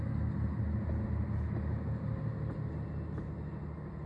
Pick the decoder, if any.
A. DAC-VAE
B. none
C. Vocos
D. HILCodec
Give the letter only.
B